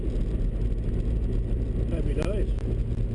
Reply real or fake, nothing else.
real